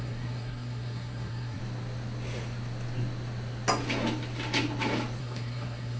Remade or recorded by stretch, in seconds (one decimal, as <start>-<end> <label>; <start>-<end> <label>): 0.0-1.6 remade; 1.6-5.2 recorded; 5.2-6.0 remade